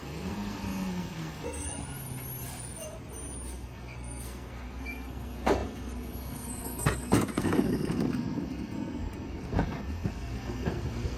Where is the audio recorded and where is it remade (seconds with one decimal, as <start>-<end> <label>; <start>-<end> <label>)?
0.0-1.8 remade; 1.8-3.5 recorded; 3.5-11.2 remade

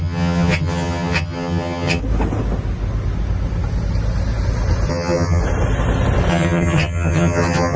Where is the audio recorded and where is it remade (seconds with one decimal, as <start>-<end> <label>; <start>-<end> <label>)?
0.0-2.0 remade; 2.0-4.9 recorded; 4.9-5.4 remade; 5.4-6.3 recorded; 6.3-7.8 remade

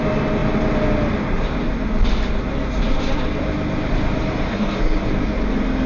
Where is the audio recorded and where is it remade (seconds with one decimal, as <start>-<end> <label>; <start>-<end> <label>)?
0.0-4.5 recorded; 4.5-5.1 remade; 5.1-5.9 recorded

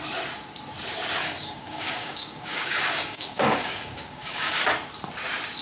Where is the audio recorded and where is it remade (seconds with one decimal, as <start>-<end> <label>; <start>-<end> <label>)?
0.0-1.2 recorded; 1.2-4.6 remade; 4.6-5.6 recorded

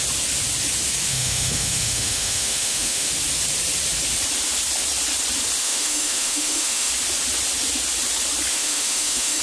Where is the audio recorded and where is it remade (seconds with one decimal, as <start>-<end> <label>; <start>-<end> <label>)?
0.0-1.1 recorded; 1.1-3.1 remade; 3.1-5.6 recorded; 5.6-6.9 remade; 6.9-8.5 recorded; 8.5-9.4 remade

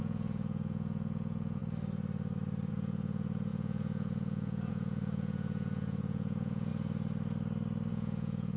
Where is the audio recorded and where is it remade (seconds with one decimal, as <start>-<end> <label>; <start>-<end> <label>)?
0.0-1.6 remade; 1.6-2.7 recorded; 2.7-6.7 remade; 6.7-7.9 recorded; 7.9-8.6 remade

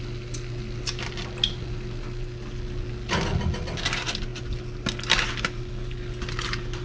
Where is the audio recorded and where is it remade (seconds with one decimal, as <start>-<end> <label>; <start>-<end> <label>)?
0.0-6.8 recorded

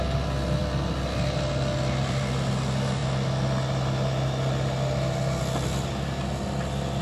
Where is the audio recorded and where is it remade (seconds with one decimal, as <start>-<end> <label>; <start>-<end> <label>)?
0.0-7.0 recorded